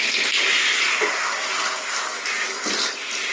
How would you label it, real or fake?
real